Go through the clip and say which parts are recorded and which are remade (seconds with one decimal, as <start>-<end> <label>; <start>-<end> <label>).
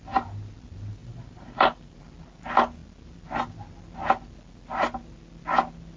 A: 0.0-1.0 recorded; 1.0-2.0 remade; 2.0-6.0 recorded